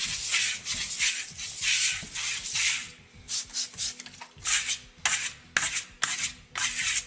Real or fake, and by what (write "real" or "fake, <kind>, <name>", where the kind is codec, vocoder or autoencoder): real